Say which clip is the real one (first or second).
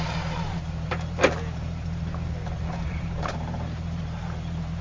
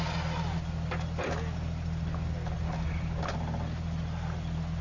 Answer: second